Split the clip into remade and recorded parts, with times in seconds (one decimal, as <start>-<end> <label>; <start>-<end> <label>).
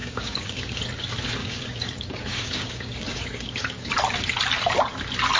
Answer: 0.0-0.8 remade; 0.8-1.4 recorded; 1.4-3.9 remade; 3.9-5.4 recorded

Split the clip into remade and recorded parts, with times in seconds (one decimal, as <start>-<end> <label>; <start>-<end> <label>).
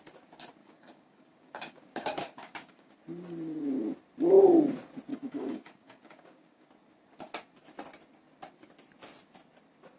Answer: 0.0-0.6 recorded; 0.6-2.9 remade; 2.9-5.1 recorded; 5.1-6.7 remade; 6.7-10.0 recorded